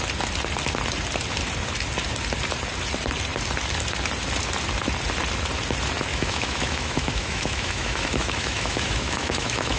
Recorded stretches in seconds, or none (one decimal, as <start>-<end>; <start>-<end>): 0.0-6.1